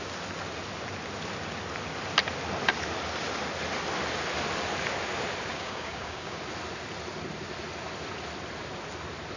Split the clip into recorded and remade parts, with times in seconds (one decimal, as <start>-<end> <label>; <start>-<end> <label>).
0.0-5.5 recorded; 5.5-6.4 remade; 6.4-9.4 recorded